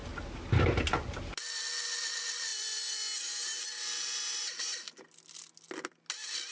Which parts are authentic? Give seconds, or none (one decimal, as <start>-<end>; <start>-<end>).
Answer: 0.0-6.5